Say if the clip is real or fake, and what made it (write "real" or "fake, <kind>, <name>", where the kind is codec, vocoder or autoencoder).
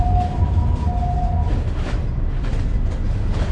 real